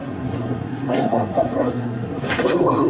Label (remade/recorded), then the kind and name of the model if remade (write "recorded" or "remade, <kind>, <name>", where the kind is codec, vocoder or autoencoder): remade, codec, SNAC